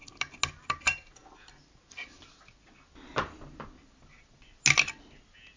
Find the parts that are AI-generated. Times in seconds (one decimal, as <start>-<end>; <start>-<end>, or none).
none

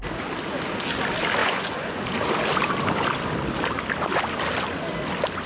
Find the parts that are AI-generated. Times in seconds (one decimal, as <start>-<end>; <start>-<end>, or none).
1.4-2.0

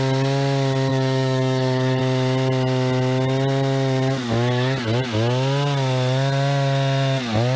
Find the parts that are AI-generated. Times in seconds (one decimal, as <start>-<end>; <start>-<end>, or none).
0.9-2.0